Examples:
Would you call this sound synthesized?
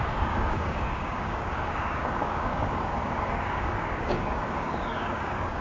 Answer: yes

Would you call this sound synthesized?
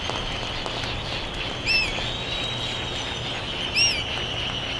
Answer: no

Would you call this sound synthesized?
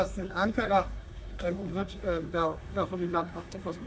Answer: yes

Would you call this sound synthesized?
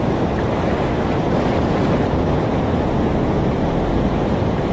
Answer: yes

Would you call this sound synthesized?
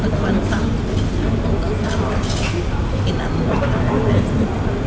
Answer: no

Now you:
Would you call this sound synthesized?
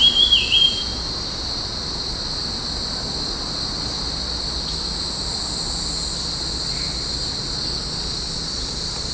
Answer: no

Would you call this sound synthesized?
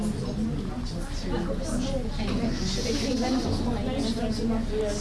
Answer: no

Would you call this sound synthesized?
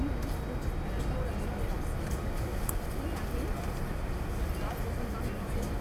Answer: no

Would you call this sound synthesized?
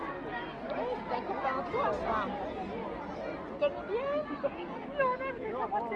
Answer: no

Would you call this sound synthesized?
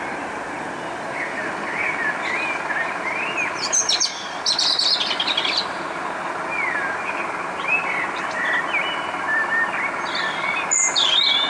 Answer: no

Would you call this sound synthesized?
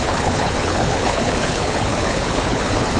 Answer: yes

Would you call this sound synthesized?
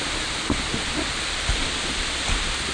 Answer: no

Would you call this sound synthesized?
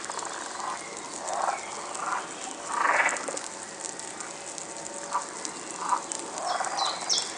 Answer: no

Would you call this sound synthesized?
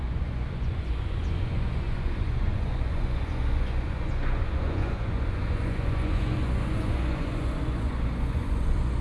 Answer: yes